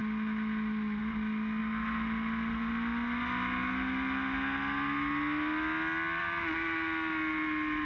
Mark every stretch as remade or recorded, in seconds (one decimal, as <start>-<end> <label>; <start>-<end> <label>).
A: 0.0-7.9 recorded